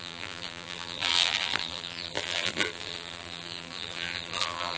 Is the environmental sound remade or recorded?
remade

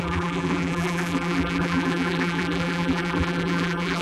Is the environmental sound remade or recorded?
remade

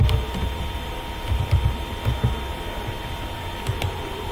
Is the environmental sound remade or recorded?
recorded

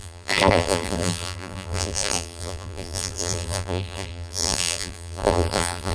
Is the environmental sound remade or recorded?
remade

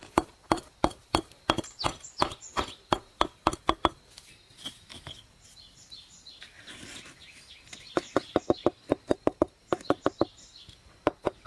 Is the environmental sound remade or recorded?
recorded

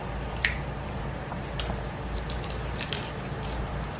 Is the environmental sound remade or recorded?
remade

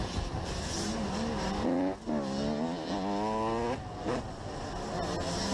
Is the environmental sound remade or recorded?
recorded